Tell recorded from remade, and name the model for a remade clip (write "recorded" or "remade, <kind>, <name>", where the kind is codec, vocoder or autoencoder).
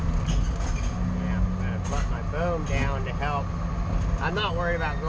recorded